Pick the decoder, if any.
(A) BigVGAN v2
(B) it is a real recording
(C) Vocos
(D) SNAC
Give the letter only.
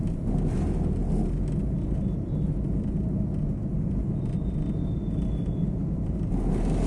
B